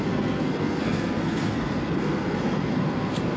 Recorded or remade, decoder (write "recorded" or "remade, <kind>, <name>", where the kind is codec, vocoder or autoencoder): remade, codec, SNAC